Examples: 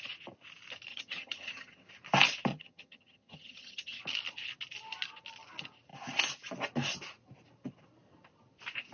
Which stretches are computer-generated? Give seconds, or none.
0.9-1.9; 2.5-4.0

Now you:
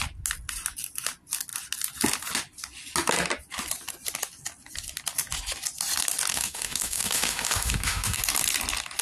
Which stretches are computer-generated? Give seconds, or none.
6.3-8.2

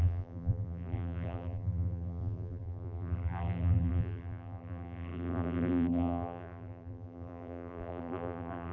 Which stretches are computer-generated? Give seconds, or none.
0.0-8.7

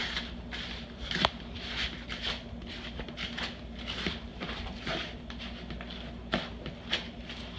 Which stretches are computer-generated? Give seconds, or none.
4.3-5.2

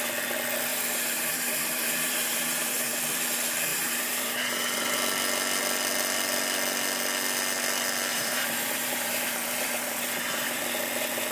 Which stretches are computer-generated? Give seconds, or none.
0.7-2.9; 3.7-5.0; 8.1-10.6